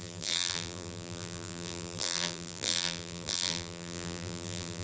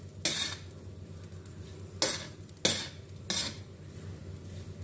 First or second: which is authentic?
second